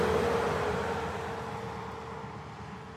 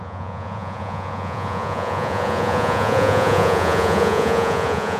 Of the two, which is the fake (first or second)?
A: second